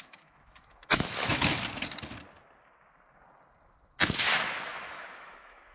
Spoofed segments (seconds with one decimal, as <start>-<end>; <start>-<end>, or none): 0.0-1.5; 4.7-5.7